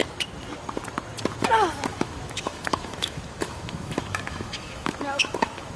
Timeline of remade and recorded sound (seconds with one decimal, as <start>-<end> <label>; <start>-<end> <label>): 0.0-1.9 recorded; 1.9-5.8 remade